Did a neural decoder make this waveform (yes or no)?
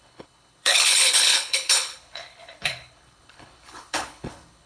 yes